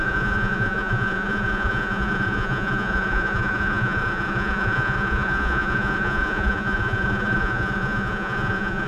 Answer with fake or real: fake